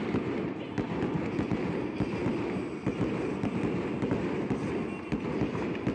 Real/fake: real